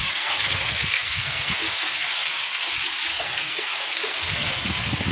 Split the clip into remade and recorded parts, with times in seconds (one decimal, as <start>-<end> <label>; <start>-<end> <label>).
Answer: 0.0-2.7 remade; 2.7-3.1 recorded; 3.1-5.1 remade